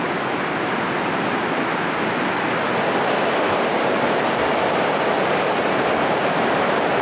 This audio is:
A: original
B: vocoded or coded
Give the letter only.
A